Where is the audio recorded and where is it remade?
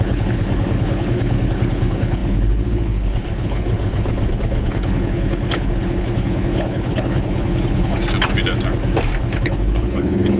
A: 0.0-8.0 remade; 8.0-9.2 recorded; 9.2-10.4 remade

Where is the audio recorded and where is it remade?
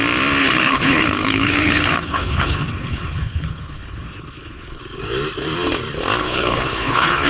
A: 0.0-0.4 recorded; 0.4-4.8 remade; 4.8-6.2 recorded; 6.2-7.3 remade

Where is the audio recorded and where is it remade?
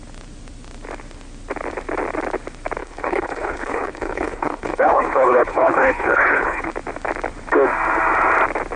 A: 0.0-2.8 recorded; 2.8-6.7 remade; 6.7-8.8 recorded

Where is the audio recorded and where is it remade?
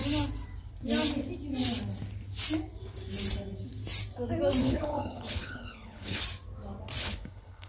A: 0.0-4.6 recorded; 4.6-6.2 remade; 6.2-7.0 recorded; 7.0-7.7 remade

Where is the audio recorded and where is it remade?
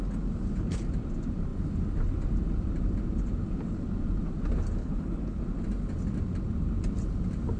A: 0.0-4.8 recorded; 4.8-5.4 remade; 5.4-7.6 recorded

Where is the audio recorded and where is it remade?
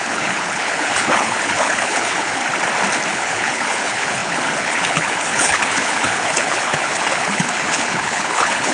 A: 0.0-2.4 remade; 2.4-3.1 recorded; 3.1-8.7 remade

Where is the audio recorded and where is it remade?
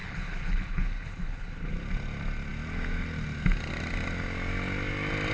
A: 0.0-1.7 remade; 1.7-5.3 recorded